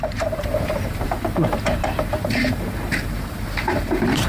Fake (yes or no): yes